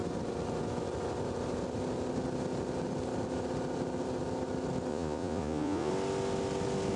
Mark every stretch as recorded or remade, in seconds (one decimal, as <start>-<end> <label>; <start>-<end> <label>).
0.0-4.9 recorded; 4.9-5.9 remade; 5.9-7.0 recorded